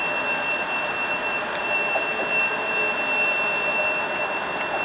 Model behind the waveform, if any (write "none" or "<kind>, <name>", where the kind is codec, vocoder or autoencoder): none